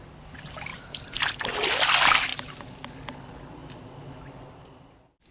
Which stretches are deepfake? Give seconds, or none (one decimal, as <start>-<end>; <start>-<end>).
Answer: 0.7-1.4; 2.3-2.9